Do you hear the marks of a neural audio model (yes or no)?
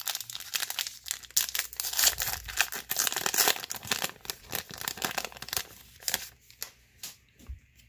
no